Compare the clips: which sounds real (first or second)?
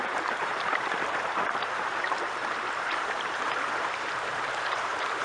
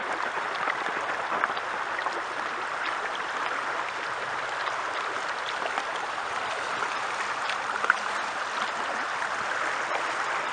second